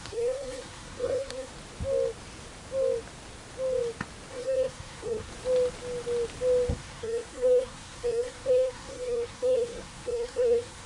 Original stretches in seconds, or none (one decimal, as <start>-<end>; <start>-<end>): 1.5-4.3; 5.3-6.7